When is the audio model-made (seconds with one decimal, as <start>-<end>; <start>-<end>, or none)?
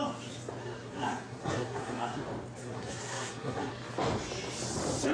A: 0.6-2.2; 2.6-3.7